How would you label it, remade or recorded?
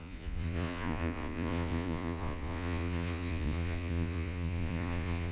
remade